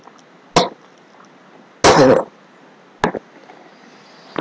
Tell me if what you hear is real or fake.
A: real